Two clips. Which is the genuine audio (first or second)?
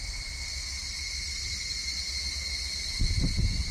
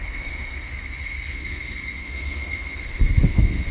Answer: first